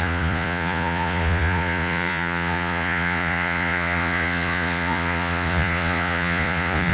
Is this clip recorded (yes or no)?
no